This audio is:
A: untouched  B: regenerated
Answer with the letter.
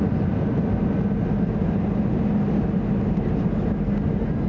A